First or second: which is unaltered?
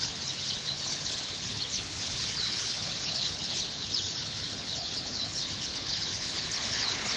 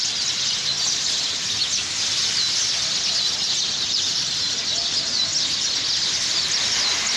second